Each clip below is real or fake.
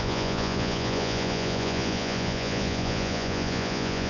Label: fake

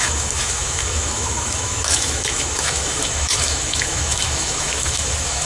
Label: fake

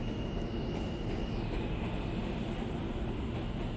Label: real